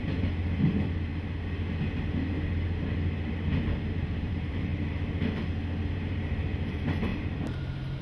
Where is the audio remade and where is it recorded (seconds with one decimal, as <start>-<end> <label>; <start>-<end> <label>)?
0.0-1.1 remade; 1.1-4.0 recorded; 4.0-4.7 remade; 4.7-5.9 recorded; 5.9-8.0 remade